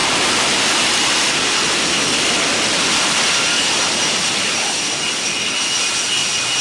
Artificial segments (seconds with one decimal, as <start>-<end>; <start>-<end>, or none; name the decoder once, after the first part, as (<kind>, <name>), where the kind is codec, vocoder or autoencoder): 0.0-6.6 (vocoder, BigVGAN v2)